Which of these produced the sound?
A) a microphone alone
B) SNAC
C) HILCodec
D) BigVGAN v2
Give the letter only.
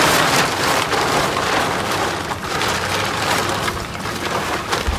D